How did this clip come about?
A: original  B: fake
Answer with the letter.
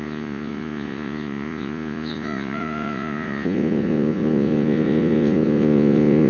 B